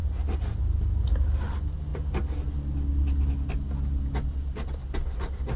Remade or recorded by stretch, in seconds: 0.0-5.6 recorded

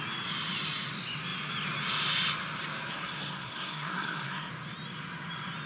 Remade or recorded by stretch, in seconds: 0.0-2.9 recorded; 2.9-4.5 remade; 4.5-5.7 recorded